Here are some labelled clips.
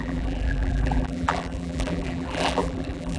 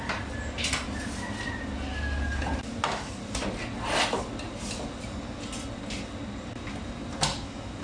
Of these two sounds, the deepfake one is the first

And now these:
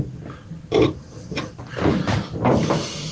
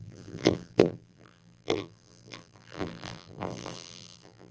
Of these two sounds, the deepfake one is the second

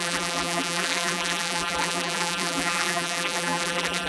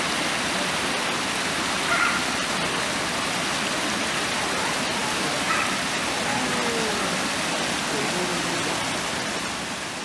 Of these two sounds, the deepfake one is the first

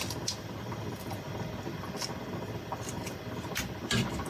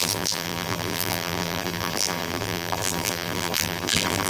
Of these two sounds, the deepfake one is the second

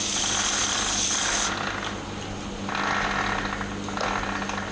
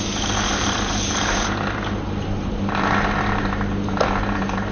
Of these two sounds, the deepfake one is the second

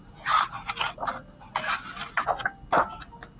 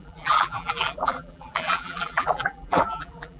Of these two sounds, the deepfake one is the second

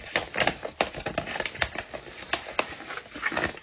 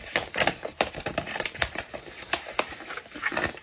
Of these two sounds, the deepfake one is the second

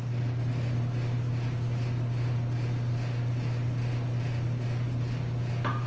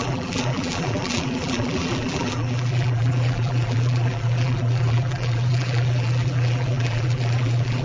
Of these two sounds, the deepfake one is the second